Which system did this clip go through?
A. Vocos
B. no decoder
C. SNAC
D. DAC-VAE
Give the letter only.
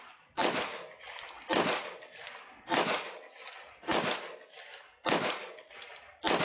B